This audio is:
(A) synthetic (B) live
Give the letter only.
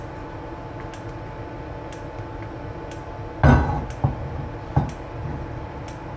B